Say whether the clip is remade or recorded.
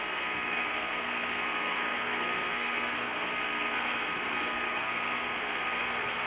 remade